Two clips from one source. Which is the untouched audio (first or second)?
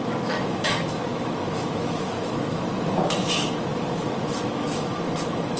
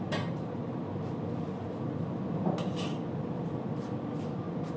second